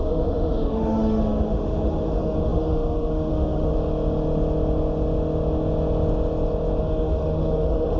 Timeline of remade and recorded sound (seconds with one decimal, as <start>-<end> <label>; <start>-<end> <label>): 0.0-3.7 remade; 3.7-6.8 recorded; 6.8-8.0 remade